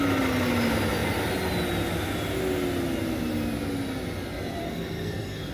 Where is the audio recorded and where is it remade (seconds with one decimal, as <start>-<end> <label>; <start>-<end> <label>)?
0.0-4.6 recorded; 4.6-5.5 remade